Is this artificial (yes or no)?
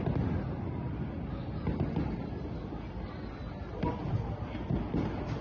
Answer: no